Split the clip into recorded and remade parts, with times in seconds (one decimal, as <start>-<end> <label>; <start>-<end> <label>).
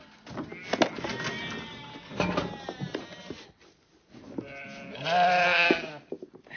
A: 0.0-6.6 recorded